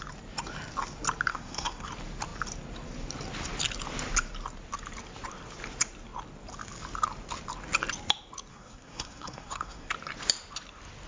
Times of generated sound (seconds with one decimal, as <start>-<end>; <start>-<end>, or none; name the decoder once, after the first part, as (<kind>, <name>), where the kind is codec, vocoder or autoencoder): 1.3-1.9 (codec, SNAC); 8.5-9.9